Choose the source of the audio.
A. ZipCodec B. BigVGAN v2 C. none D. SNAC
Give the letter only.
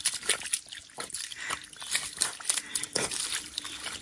C